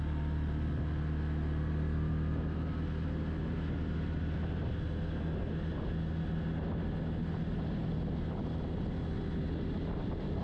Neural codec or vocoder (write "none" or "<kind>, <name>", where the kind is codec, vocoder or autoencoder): none